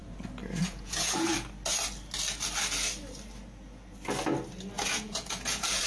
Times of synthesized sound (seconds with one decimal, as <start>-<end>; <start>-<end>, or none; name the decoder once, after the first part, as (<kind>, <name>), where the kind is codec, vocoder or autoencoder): 0.6-1.3 (vocoder, Vocos); 4.8-5.9